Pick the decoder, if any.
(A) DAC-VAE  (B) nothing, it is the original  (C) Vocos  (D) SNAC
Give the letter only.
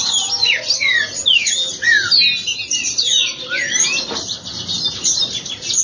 B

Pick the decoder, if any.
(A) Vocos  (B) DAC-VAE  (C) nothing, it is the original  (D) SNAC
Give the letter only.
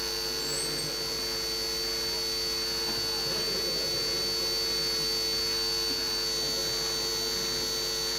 C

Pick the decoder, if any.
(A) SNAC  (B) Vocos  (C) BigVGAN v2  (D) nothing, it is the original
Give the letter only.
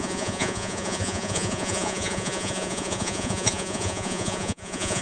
B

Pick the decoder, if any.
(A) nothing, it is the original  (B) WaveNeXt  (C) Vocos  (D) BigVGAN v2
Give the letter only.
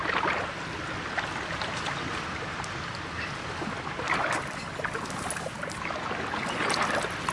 A